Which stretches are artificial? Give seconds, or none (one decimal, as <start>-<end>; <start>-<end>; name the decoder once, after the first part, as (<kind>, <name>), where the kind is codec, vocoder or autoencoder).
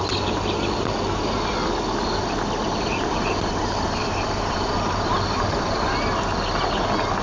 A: 2.9-6.0 (vocoder, BigVGAN v2)